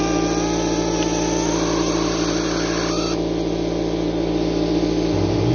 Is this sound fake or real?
real